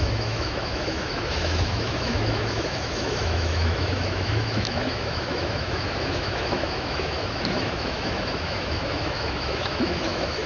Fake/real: fake